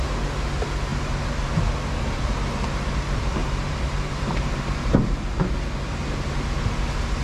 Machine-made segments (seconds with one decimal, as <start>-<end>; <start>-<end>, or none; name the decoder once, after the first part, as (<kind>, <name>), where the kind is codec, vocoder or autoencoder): 3.4-5.5 (vocoder, BigVGAN v2)